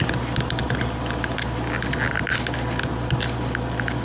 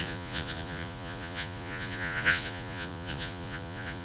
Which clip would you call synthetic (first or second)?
second